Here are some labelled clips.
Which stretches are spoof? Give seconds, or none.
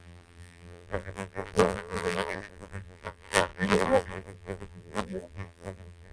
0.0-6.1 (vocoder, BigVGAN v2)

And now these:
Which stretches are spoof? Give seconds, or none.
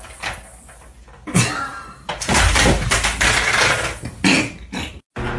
none